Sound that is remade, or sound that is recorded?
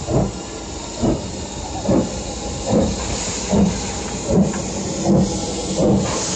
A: recorded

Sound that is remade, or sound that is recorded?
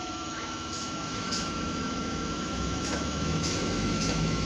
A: remade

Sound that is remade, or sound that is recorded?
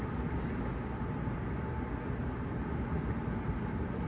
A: recorded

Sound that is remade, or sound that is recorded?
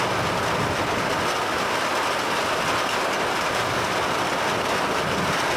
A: recorded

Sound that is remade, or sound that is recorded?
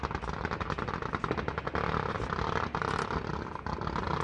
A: recorded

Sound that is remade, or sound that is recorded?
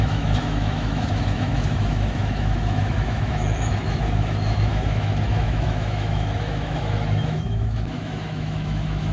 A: remade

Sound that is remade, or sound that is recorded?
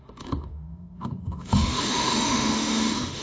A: remade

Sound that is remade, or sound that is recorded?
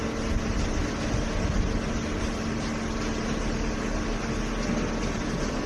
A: recorded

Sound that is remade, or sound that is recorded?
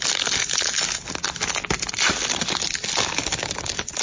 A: recorded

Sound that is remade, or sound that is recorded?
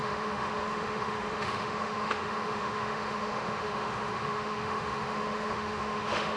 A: remade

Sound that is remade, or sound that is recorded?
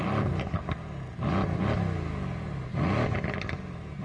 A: recorded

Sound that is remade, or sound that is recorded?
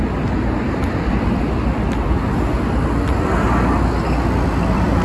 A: recorded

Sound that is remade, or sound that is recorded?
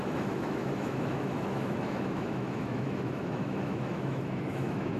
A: remade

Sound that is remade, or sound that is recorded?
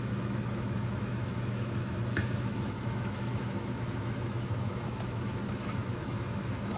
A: remade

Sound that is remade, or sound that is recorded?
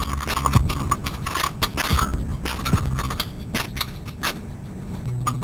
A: recorded